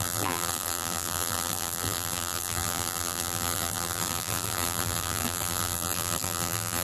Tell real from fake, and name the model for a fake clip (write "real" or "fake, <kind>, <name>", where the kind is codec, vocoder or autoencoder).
fake, vocoder, BigVGAN v2